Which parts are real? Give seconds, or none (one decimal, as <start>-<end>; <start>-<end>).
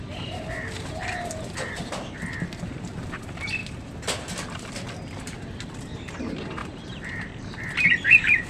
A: 0.0-6.6; 7.6-8.5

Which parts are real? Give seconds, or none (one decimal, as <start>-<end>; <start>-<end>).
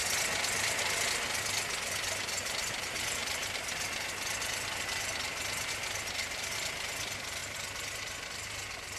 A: 0.0-7.4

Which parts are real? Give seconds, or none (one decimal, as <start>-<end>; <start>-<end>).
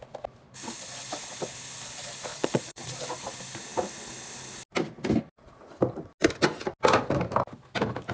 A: 0.0-2.3; 3.0-8.1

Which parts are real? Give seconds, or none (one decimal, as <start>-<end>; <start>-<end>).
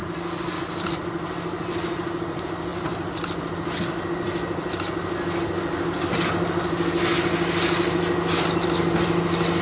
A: 0.0-9.6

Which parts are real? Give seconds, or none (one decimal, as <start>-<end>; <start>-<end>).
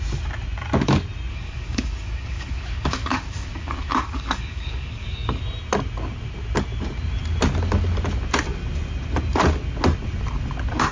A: 0.0-1.3; 5.4-10.9